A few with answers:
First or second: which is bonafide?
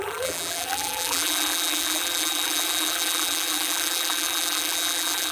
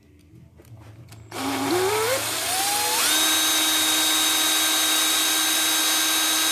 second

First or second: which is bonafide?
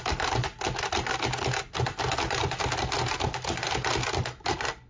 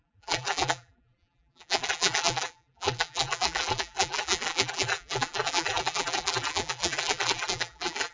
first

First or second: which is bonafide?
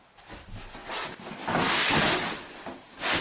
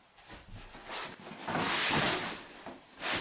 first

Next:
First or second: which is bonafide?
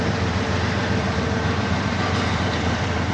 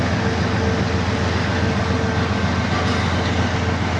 second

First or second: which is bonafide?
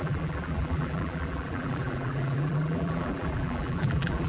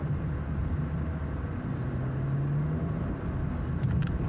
second